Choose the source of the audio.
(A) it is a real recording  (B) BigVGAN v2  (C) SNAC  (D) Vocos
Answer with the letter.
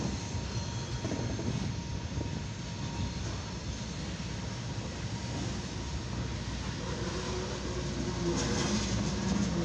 A